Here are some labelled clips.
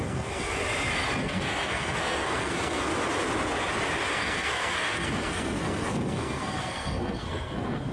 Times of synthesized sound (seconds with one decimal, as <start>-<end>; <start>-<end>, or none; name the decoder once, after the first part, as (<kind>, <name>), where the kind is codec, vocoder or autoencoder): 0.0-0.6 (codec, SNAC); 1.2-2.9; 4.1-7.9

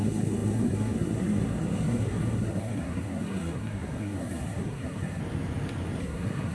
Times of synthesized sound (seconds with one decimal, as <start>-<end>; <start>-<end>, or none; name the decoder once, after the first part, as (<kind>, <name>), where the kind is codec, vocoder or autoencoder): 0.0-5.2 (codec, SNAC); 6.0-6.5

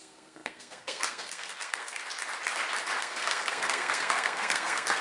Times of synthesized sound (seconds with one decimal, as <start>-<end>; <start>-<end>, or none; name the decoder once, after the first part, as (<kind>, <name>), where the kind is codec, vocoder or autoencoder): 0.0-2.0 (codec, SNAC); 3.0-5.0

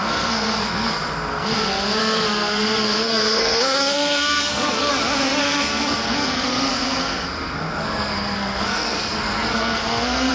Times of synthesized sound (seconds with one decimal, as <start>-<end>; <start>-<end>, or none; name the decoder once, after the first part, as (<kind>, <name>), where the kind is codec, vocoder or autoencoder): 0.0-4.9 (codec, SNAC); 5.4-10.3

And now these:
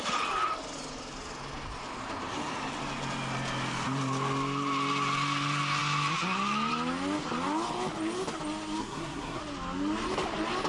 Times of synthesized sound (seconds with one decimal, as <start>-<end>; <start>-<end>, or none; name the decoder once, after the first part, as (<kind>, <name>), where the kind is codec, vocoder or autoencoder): 8.8-9.4 (codec, SNAC)

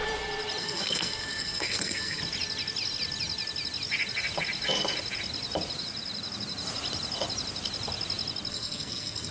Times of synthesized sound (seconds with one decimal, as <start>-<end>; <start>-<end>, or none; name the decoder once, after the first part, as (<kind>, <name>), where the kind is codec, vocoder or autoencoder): 0.6-2.2 (codec, SNAC); 8.5-9.3

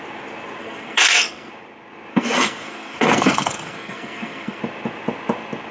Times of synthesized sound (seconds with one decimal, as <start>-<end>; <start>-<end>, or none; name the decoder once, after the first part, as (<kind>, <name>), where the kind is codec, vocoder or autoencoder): 0.6-1.5 (codec, SNAC); 2.1-4.6